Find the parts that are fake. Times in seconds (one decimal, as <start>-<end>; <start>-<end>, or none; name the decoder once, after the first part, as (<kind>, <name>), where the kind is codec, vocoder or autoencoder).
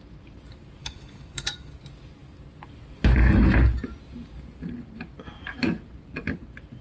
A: 0.8-1.7 (codec, DAC)